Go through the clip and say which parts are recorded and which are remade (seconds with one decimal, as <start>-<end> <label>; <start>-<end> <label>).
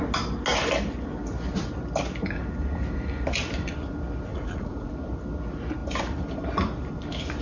0.0-4.3 recorded; 4.3-4.9 remade; 4.9-7.4 recorded